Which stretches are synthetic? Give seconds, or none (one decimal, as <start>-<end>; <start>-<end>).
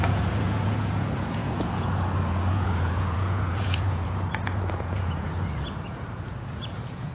0.0-7.1